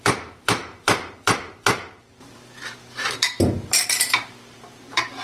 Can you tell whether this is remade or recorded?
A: remade